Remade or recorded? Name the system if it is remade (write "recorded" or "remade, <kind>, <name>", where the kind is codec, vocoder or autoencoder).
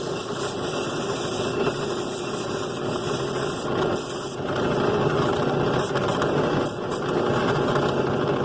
recorded